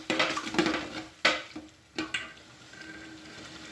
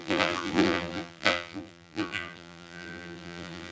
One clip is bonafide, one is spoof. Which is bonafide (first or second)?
first